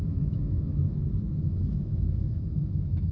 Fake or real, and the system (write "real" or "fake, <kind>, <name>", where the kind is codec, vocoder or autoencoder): fake, autoencoder, DAC-VAE